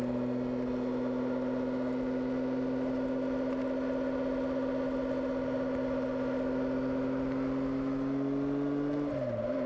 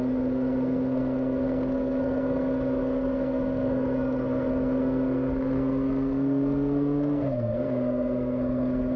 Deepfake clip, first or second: second